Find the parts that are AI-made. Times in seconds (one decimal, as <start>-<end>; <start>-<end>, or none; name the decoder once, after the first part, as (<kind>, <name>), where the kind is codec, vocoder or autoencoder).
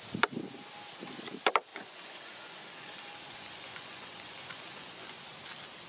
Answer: 1.7-5.2 (vocoder, Vocos)